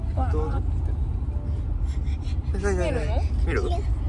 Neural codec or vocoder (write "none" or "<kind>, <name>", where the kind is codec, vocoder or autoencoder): none